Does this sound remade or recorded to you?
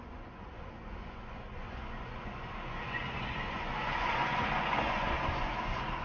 remade